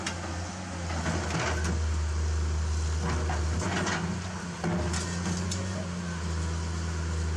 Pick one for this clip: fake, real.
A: real